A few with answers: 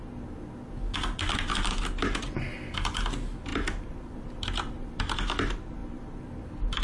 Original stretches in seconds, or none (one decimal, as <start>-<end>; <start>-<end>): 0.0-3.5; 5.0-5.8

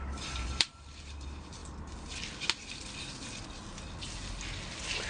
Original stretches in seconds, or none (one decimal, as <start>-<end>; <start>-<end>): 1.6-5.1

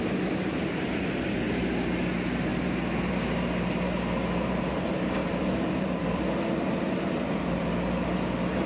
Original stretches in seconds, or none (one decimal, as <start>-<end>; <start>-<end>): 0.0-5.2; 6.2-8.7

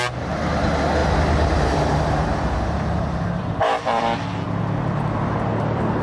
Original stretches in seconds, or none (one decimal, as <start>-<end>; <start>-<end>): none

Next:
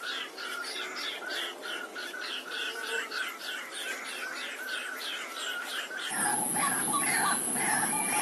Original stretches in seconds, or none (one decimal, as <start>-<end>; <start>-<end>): 0.0-1.9; 3.1-8.2

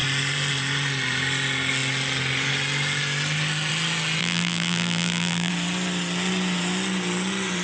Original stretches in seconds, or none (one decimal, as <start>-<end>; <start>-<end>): 0.0-4.2; 5.5-7.6

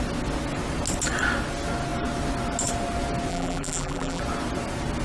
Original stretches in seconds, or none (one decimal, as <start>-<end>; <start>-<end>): 0.0-3.3; 4.2-5.0